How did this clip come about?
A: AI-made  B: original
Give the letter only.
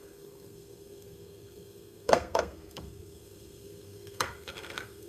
A